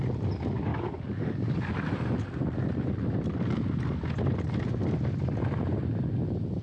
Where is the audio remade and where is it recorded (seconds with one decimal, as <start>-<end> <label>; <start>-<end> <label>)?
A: 0.0-0.7 recorded; 0.7-1.7 remade; 1.7-6.6 recorded